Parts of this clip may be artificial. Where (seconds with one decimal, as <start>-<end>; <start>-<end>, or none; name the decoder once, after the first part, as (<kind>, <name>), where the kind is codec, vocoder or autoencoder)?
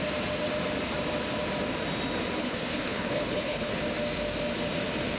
2.4-3.7 (codec, HILCodec)